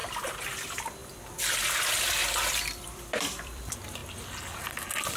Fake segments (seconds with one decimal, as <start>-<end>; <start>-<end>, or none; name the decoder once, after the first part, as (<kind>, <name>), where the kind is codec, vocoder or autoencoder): 2.2-3.6 (vocoder, BigVGAN v2)